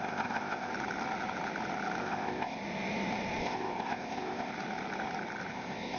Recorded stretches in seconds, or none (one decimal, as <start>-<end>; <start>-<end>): 0.7-2.0; 2.6-3.4; 4.5-5.5